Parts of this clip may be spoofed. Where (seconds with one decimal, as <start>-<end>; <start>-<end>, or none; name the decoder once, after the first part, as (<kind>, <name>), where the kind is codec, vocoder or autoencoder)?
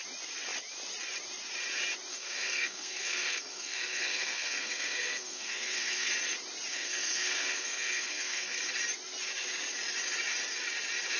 2.1-6.1 (codec, SNAC); 6.7-8.6